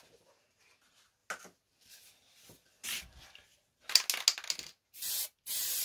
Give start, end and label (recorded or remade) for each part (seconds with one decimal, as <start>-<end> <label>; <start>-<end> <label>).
0.0-5.8 recorded